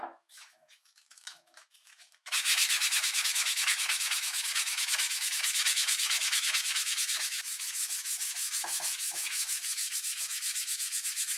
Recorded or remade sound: remade